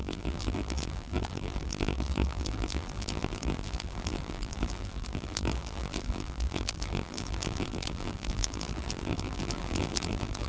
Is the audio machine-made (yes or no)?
yes